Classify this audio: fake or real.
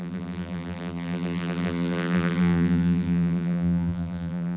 fake